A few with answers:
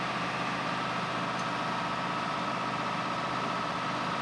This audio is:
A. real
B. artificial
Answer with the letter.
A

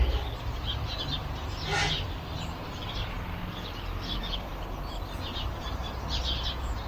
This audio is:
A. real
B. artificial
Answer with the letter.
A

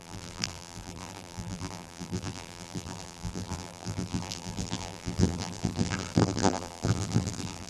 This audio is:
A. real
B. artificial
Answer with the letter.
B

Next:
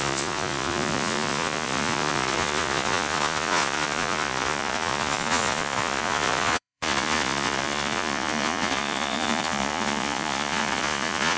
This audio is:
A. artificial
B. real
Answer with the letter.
A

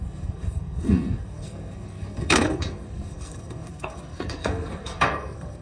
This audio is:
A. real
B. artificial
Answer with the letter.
B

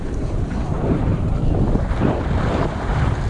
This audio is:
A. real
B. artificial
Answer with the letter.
B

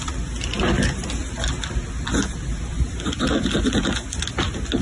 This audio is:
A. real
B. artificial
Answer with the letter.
A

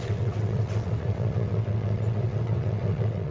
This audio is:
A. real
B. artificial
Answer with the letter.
B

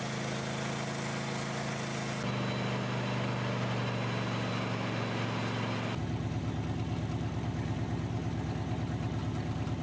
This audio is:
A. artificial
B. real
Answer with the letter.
B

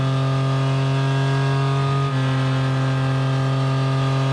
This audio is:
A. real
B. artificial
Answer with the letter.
A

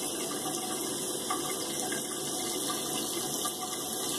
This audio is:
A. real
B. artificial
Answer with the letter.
A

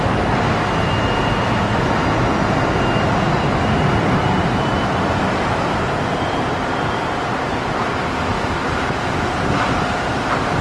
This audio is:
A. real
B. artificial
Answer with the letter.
A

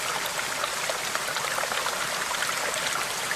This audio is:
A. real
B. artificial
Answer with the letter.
A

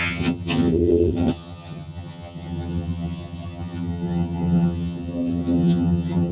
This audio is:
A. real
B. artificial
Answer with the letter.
B